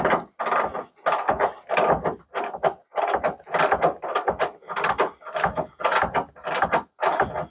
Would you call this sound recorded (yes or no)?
yes